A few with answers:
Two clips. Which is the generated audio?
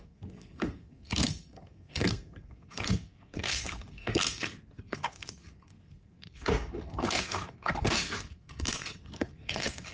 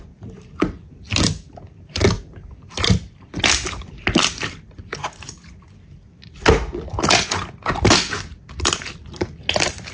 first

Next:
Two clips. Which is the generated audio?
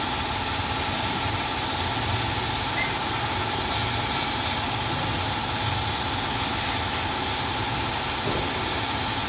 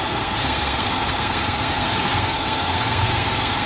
second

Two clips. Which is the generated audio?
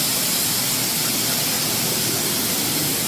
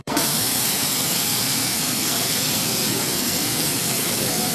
second